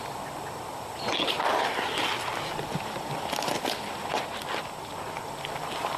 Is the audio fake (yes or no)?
no